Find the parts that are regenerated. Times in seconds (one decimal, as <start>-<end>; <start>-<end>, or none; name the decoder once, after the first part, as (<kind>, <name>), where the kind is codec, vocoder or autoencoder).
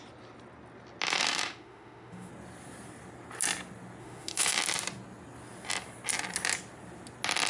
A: 1.2-2.3 (autoencoder, DAC-VAE); 4.0-4.6